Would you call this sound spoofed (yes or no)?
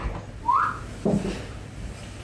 no